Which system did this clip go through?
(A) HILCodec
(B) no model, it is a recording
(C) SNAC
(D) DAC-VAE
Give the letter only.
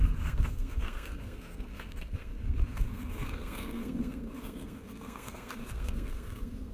C